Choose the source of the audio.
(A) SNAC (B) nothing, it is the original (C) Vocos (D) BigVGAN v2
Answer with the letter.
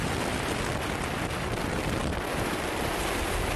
B